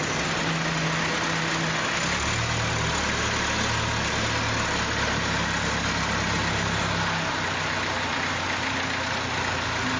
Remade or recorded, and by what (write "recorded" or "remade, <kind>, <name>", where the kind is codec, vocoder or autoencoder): recorded